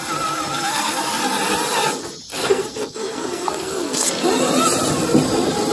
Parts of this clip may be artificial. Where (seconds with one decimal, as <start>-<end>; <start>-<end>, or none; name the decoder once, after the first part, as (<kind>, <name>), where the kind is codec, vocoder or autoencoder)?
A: 0.5-1.0 (codec, SNAC); 2.3-4.1

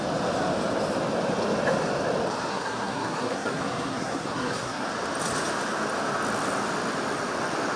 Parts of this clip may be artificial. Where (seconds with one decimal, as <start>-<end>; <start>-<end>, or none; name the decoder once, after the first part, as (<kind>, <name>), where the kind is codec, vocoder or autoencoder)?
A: 2.5-4.9 (codec, SNAC)

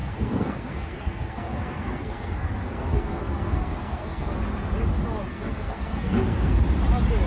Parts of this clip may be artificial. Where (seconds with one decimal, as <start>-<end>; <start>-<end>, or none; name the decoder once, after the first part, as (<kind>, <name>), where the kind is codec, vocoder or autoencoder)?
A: 0.0-4.4 (codec, SNAC); 5.3-6.6

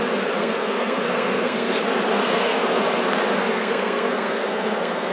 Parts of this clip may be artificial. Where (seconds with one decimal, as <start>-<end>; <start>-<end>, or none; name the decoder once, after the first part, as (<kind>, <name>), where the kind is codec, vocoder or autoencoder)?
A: 0.4-1.8 (codec, SNAC); 2.2-2.8; 3.5-5.1

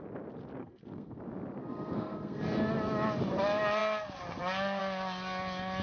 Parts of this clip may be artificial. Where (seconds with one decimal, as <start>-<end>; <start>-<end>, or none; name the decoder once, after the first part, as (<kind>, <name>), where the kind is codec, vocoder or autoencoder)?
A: 0.6-1.2 (codec, SNAC); 1.6-2.4

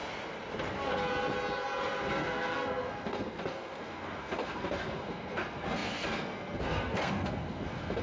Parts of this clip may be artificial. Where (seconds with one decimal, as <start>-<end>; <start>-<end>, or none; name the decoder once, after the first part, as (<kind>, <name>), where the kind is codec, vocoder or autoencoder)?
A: 2.0-8.0 (codec, SNAC)